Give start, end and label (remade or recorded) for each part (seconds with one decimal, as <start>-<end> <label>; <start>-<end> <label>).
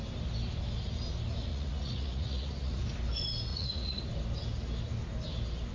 0.0-1.5 recorded; 1.5-2.8 remade; 2.8-3.5 recorded; 3.5-4.0 remade; 4.0-5.7 recorded